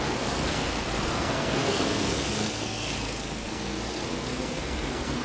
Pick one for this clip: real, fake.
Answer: fake